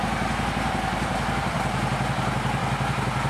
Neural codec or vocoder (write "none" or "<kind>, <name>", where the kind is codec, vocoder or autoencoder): none